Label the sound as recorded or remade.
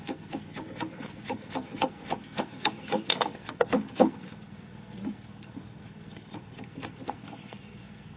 remade